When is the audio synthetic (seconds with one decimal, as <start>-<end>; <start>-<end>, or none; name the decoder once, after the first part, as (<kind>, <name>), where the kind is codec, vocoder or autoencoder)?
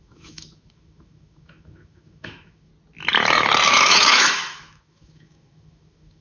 0.0-2.7 (autoencoder, DAC-VAE); 3.7-6.2